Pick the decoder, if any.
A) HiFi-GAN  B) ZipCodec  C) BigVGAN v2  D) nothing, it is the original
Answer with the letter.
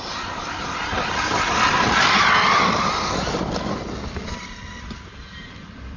D